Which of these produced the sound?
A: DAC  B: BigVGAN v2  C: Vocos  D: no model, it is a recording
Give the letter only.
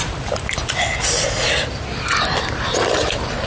D